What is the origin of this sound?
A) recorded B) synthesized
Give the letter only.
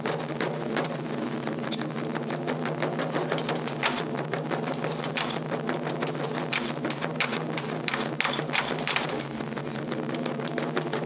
A